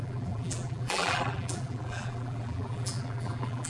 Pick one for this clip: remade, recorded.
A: remade